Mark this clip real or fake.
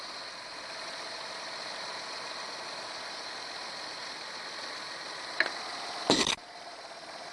real